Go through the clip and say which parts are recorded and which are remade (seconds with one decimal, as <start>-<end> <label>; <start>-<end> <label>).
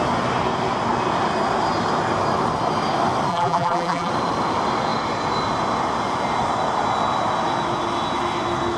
0.0-3.3 recorded; 3.3-4.1 remade; 4.1-8.8 recorded